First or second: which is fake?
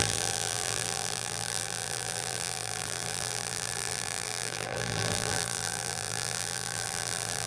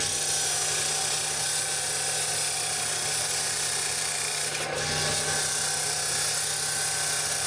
first